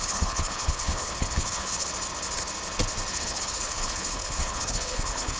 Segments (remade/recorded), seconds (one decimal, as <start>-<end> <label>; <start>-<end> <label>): 0.0-1.9 remade; 1.9-3.1 recorded; 3.1-5.4 remade